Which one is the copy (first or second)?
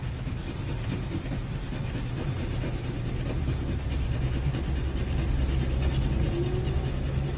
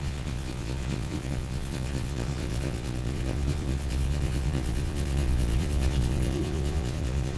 second